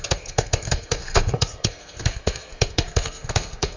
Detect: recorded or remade remade